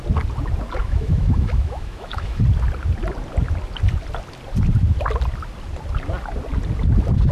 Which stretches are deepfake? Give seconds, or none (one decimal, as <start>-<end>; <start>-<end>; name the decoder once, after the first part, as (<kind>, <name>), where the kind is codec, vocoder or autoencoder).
0.8-2.4 (autoencoder, DAC-VAE)